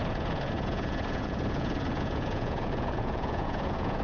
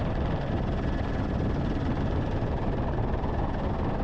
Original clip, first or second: second